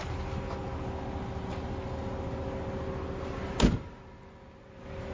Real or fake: real